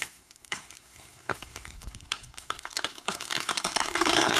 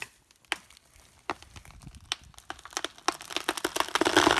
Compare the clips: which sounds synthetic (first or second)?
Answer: first